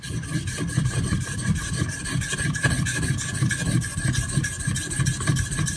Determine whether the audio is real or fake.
real